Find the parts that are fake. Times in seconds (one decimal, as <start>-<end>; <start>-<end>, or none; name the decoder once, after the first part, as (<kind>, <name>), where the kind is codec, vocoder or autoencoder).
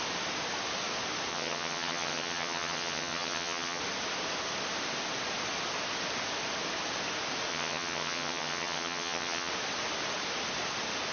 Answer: 1.3-3.8 (vocoder, HiFi-GAN); 7.5-9.5